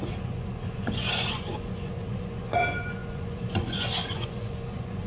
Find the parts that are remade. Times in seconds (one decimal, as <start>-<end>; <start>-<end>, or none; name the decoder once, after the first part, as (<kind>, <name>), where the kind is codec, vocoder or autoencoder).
0.0-5.1 (vocoder, Vocos)